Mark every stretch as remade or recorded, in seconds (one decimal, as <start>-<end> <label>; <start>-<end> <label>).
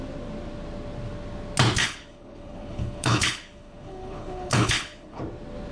0.0-1.8 recorded; 1.8-5.2 remade; 5.2-5.7 recorded